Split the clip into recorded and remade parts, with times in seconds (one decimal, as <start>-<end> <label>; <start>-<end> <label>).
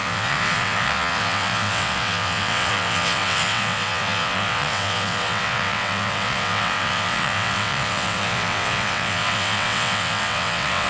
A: 0.0-10.9 remade